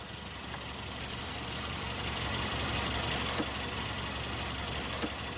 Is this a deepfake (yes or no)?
no